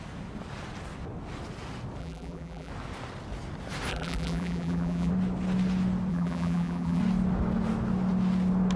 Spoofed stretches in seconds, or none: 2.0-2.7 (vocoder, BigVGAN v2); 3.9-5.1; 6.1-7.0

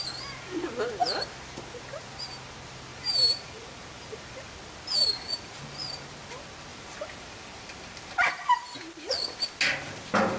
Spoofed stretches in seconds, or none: 2.9-4.3 (vocoder, BigVGAN v2); 6.7-8.3

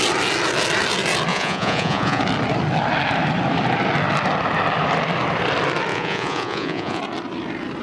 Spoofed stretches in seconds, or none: 1.3-2.2 (vocoder, Vocos); 5.9-7.0